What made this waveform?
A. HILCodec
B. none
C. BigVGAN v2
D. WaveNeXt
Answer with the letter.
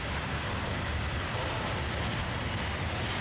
B